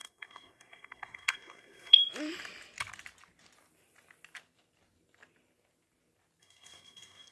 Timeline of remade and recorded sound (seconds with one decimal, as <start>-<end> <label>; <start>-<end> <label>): 0.0-2.0 remade; 2.0-6.4 recorded; 6.4-7.3 remade